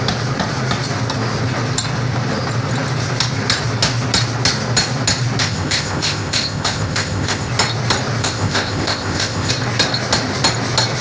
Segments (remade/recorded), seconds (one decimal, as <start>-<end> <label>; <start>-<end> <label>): 0.0-5.4 recorded; 5.4-7.5 remade; 7.5-8.2 recorded; 8.2-9.5 remade; 9.5-11.0 recorded